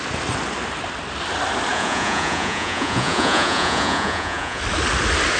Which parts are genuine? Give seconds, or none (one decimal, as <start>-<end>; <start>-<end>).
0.0-1.7; 4.6-5.4